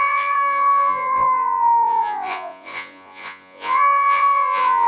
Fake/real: fake